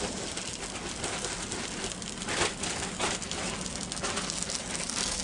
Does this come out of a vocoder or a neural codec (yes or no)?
no